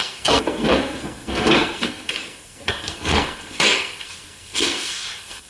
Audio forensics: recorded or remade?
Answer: remade